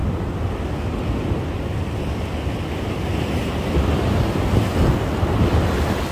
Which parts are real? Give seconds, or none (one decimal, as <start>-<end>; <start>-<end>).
0.0-6.1